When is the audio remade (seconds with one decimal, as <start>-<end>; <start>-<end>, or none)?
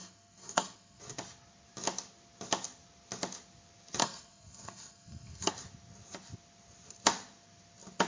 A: 0.0-1.0; 4.0-5.5